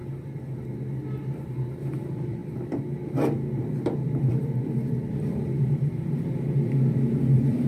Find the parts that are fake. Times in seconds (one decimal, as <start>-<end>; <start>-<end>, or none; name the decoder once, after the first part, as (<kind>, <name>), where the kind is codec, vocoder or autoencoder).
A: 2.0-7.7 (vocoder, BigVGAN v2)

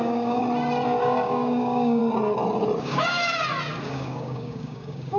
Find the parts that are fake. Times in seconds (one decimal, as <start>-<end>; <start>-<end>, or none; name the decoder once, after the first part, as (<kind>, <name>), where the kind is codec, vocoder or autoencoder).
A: 0.0-0.4 (codec, DAC); 1.0-2.0; 2.8-3.2; 3.8-5.2

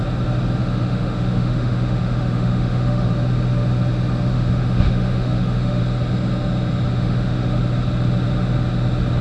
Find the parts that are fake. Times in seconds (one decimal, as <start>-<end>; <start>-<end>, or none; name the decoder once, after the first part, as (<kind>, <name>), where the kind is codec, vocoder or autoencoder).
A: 0.6-3.1 (autoencoder, DAC-VAE); 4.3-5.8; 6.9-7.6